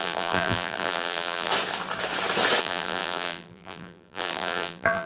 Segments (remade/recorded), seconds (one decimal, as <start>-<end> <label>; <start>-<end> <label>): 0.0-1.5 remade; 1.5-2.6 recorded; 2.6-5.1 remade